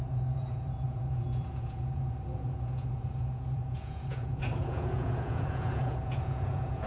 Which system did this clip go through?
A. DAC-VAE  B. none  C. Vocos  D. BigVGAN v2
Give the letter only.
C